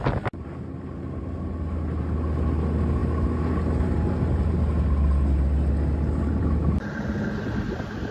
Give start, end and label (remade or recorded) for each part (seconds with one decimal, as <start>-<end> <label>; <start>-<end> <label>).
0.0-8.1 recorded